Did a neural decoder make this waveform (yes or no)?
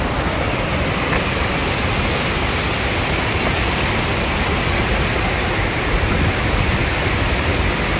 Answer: no